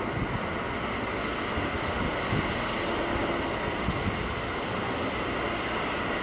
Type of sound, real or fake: real